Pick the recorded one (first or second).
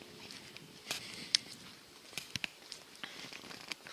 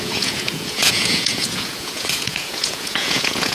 first